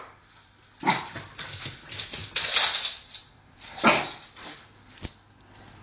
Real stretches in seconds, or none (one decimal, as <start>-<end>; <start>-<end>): none